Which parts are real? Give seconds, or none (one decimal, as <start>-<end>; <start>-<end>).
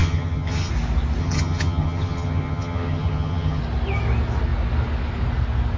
0.7-1.2; 3.6-5.8